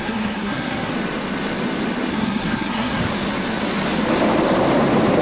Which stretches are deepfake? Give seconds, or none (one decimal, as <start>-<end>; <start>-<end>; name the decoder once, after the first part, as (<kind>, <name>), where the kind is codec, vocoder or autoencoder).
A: 0.0-0.9 (codec, SNAC); 2.1-3.0